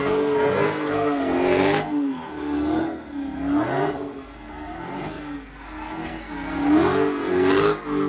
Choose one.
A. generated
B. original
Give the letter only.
A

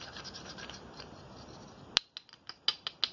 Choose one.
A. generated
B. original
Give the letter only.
B